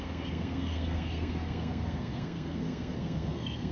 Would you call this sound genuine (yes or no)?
no